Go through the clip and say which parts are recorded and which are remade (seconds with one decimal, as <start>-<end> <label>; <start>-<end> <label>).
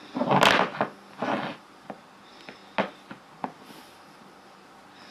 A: 0.0-5.1 recorded